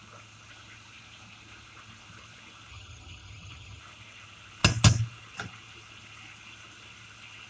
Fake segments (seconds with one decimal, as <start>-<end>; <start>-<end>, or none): 2.7-3.8